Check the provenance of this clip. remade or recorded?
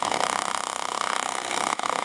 remade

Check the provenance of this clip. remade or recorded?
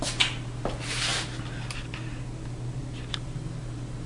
recorded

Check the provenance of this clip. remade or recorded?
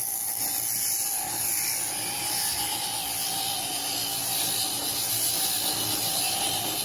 recorded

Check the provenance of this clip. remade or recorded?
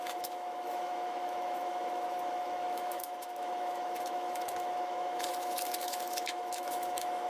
remade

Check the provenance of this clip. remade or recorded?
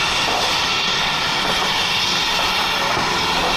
recorded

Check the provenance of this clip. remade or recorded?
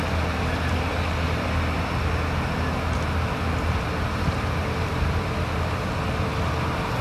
recorded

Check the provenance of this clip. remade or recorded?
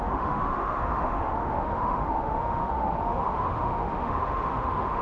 remade